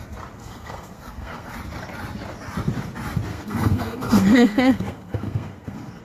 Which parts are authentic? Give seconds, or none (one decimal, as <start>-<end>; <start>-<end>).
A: 0.0-0.4; 1.5-3.3